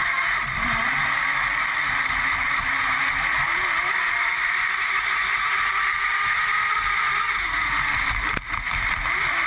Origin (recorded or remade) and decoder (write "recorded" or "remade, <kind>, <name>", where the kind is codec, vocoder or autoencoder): recorded